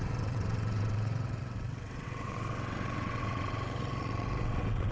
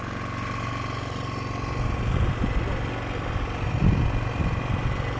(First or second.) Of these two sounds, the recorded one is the second